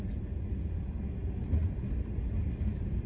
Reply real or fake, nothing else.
real